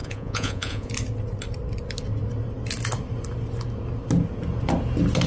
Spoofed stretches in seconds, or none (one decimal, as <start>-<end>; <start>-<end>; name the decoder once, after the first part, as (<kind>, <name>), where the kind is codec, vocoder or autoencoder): 0.0-0.9 (vocoder, Vocos)